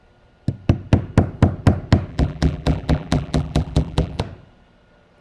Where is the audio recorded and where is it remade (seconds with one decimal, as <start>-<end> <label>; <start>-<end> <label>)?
0.0-2.1 recorded; 2.1-4.2 remade; 4.2-5.2 recorded